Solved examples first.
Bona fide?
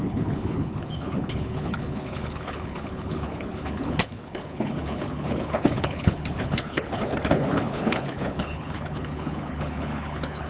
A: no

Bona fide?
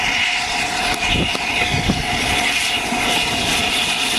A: yes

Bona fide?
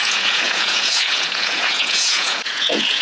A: no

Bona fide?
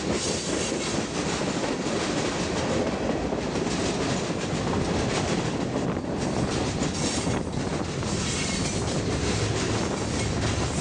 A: yes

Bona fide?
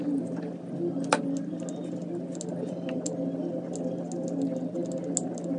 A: yes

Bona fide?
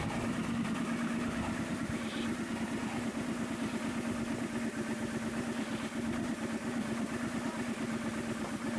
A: yes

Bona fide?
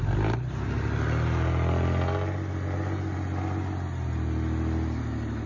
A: yes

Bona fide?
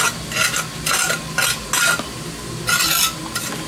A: yes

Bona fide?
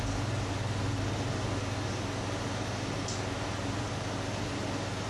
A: yes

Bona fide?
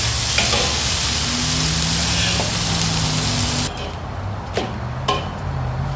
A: yes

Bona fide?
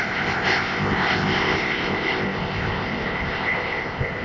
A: no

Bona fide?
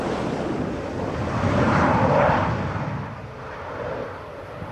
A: yes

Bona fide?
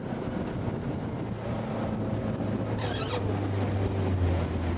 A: yes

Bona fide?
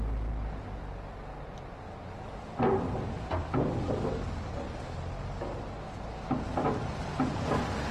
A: yes